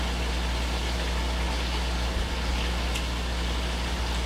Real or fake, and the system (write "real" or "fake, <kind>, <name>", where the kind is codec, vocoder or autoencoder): real